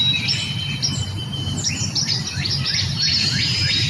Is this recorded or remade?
recorded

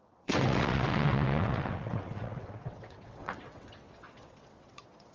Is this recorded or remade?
remade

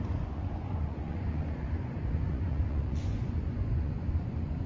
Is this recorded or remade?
remade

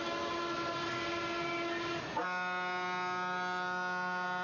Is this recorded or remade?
recorded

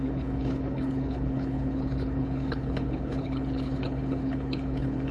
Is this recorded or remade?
remade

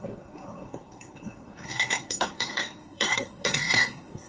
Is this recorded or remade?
remade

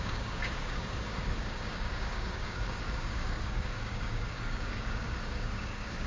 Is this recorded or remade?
remade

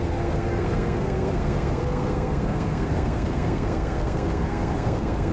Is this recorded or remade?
remade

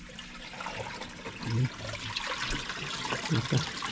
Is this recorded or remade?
recorded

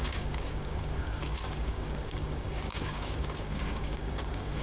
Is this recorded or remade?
remade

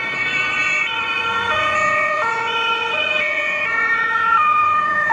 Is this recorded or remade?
remade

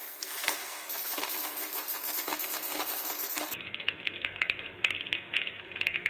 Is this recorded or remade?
remade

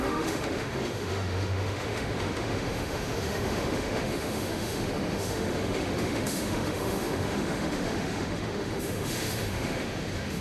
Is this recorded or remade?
remade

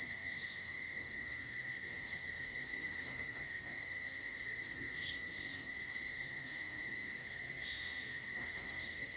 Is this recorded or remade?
remade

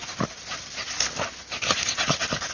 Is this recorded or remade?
recorded